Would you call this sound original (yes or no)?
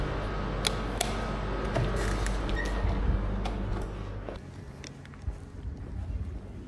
yes